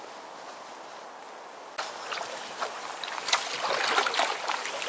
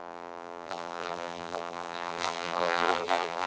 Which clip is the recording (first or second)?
first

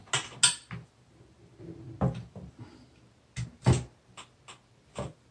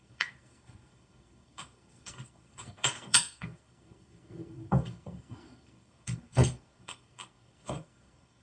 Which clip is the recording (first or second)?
first